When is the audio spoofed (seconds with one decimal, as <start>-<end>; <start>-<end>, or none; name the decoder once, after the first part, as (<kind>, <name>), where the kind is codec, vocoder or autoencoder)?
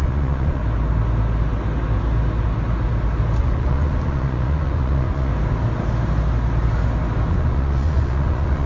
0.0-0.6 (vocoder, Vocos); 3.4-5.3; 7.3-8.7